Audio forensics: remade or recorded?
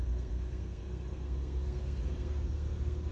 remade